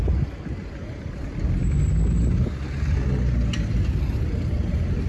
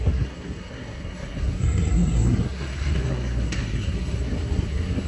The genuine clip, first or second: first